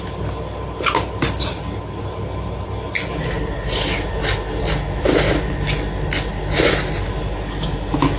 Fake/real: real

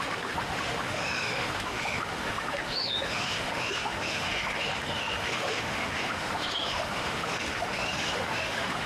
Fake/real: fake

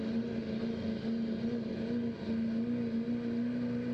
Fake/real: real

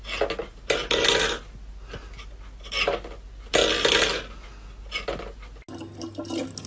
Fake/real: real